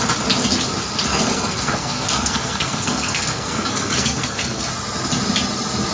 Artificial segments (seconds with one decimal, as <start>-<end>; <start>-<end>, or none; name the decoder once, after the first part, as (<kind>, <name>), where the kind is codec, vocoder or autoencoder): 1.1-4.6 (codec, SNAC)